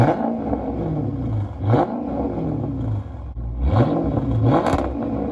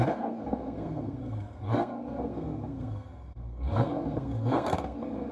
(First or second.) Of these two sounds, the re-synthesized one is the second